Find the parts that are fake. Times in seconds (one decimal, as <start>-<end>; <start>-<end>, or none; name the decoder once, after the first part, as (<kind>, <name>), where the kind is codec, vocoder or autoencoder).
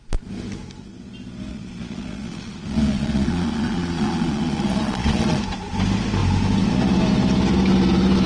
1.5-5.4 (vocoder, Vocos)